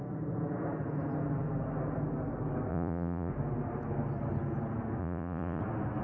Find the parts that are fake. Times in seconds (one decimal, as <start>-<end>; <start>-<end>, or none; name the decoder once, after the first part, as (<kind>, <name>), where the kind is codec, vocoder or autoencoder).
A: 2.7-3.3 (vocoder, Vocos); 5.0-5.6